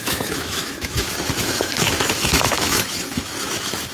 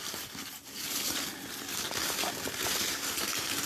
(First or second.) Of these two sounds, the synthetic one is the first